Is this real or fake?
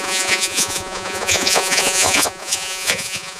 fake